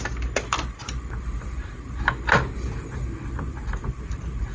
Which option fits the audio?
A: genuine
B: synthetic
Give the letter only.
A